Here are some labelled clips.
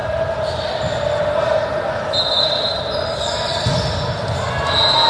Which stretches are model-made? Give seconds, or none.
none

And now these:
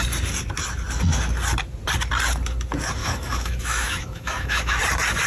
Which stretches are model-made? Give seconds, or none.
3.0-4.8 (autoencoder, DAC-VAE)

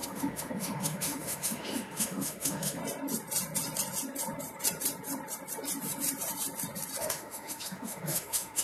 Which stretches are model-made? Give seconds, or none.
0.0-2.8 (autoencoder, DAC-VAE); 7.0-8.6